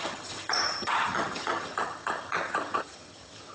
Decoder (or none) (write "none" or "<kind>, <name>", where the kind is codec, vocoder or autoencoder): vocoder, HiFi-GAN